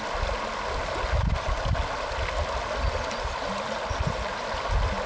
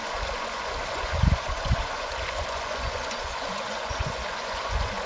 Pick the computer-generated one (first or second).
second